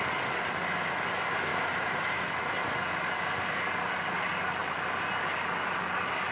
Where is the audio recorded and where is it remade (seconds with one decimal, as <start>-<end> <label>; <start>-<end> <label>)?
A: 0.0-1.5 recorded; 1.5-2.4 remade; 2.4-6.3 recorded